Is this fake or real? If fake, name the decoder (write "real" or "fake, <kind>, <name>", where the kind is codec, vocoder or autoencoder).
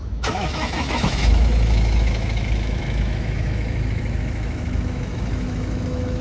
fake, autoencoder, DAC-VAE